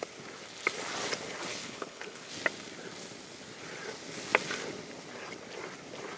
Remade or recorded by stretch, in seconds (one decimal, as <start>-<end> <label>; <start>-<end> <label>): 0.0-1.5 recorded; 1.5-2.3 remade; 2.3-6.2 recorded